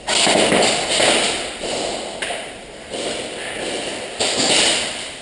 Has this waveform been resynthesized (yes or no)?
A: no